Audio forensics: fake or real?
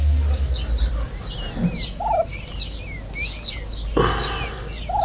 real